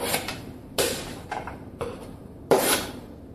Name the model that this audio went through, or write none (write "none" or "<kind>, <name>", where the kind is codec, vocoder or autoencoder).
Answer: vocoder, BigVGAN v2